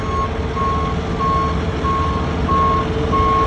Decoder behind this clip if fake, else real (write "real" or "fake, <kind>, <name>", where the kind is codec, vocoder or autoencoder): real